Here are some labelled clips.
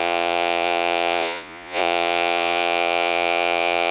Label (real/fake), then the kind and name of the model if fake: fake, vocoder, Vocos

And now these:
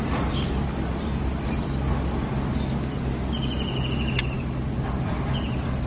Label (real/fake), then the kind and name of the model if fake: real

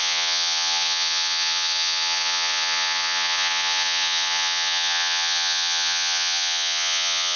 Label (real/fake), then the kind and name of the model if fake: fake, vocoder, Vocos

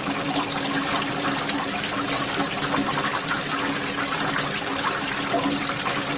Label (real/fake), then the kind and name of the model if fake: real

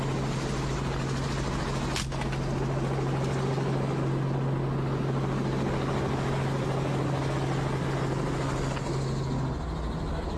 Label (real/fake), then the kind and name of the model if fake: real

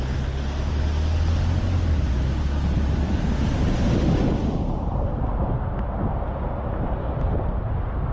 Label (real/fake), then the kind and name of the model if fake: real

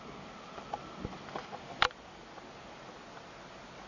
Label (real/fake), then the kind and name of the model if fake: real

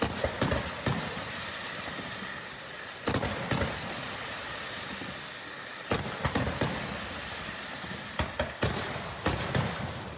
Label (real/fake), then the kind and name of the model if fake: real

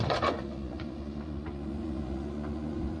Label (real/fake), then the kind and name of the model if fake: fake, vocoder, Vocos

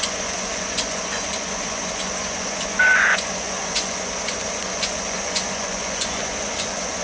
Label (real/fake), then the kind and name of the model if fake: fake, vocoder, Vocos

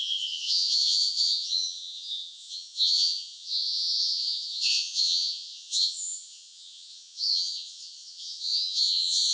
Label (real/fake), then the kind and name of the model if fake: fake, vocoder, Vocos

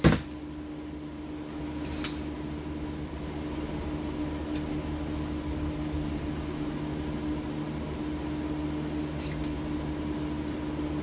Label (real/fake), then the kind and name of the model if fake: real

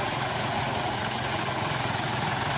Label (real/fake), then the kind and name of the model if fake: fake, vocoder, Vocos